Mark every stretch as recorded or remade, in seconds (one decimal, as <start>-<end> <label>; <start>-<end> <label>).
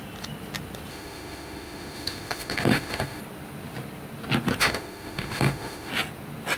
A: 0.0-0.9 recorded; 0.9-3.2 remade; 3.2-4.6 recorded; 4.6-5.9 remade; 5.9-6.6 recorded